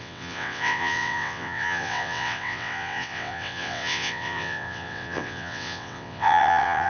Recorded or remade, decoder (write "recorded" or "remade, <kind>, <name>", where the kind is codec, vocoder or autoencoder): remade, vocoder, WaveNeXt